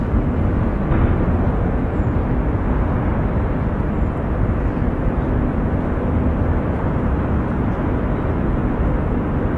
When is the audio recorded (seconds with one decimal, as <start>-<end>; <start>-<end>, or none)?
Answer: 0.0-9.6